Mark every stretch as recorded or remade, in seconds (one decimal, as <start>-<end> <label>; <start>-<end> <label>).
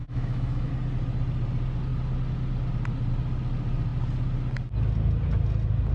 0.0-0.7 remade; 0.7-5.9 recorded